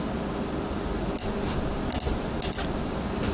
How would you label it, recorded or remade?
recorded